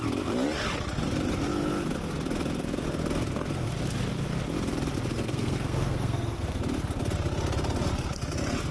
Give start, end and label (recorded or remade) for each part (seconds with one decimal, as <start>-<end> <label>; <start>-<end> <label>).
0.0-5.1 recorded; 5.1-6.6 remade; 6.6-8.7 recorded